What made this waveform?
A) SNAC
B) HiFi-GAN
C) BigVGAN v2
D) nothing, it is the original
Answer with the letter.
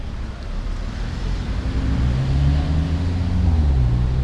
D